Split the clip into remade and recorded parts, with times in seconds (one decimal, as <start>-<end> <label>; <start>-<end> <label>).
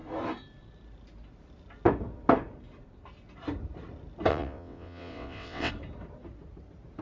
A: 0.0-4.3 recorded; 4.3-5.7 remade; 5.7-7.0 recorded